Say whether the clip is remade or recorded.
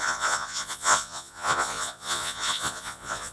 remade